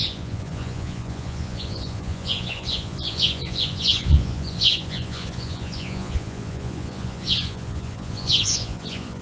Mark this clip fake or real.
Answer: fake